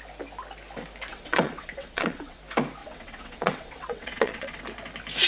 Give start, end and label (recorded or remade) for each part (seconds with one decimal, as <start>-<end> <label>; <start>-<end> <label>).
0.0-1.1 recorded; 1.1-2.4 remade; 2.4-2.8 recorded; 2.8-4.6 remade; 4.6-5.3 recorded